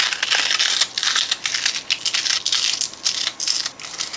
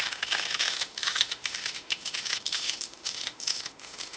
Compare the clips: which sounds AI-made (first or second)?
second